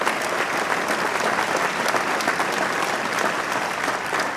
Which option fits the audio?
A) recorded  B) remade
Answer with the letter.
A